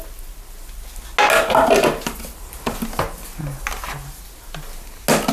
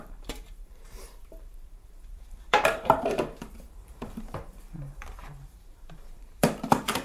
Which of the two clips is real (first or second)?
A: first